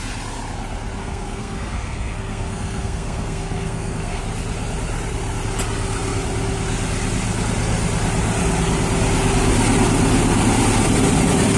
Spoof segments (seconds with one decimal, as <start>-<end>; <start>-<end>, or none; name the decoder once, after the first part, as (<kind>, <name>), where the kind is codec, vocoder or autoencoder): 1.0-4.2 (codec, SNAC)